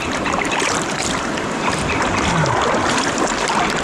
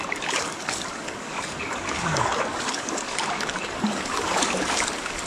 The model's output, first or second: second